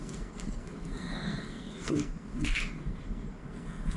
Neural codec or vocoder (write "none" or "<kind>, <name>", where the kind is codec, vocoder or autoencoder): codec, SNAC